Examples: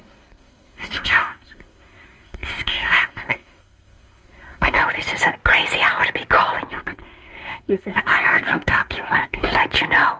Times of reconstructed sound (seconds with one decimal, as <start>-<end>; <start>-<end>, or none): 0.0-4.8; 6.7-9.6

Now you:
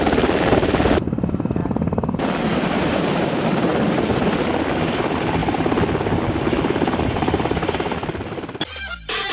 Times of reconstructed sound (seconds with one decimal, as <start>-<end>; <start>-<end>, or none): 0.0-1.6; 2.2-3.7; 4.7-9.3

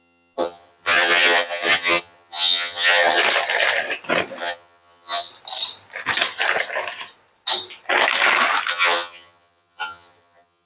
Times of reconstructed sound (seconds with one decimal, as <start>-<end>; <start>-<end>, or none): 0.0-3.2; 4.4-5.3; 8.7-10.7

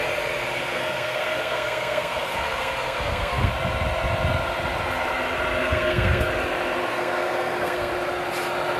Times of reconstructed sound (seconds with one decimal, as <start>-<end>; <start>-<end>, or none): 0.6-3.5; 5.6-6.2; 6.9-7.9

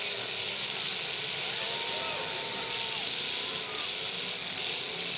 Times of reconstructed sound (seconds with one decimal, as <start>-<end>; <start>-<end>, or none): none

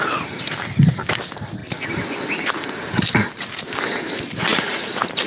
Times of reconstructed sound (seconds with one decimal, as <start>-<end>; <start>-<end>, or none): none